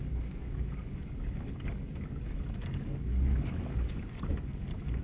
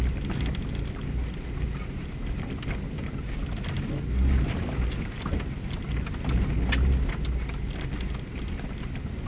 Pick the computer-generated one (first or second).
first